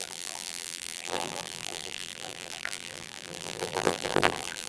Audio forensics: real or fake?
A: fake